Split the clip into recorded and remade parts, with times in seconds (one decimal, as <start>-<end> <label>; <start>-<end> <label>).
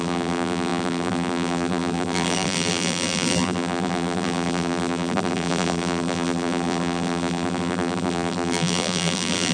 0.0-9.5 remade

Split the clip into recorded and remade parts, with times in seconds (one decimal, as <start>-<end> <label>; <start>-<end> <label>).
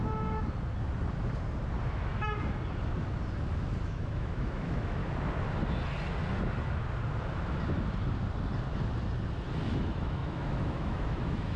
0.0-3.8 recorded; 3.8-5.0 remade; 5.0-9.7 recorded; 9.7-11.6 remade